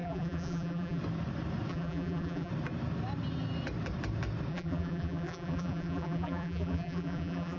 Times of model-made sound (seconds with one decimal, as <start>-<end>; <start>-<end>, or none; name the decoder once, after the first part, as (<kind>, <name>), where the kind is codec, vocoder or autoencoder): 0.0-1.0 (vocoder, BigVGAN v2); 1.7-2.5; 4.5-7.6